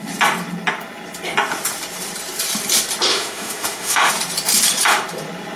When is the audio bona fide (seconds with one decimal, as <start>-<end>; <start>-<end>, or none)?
0.0-3.1; 4.1-5.6